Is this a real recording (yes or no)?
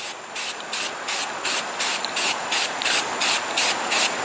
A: yes